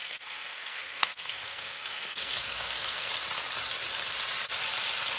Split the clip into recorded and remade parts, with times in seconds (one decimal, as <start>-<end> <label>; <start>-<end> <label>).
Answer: 0.0-3.1 remade; 3.1-5.2 recorded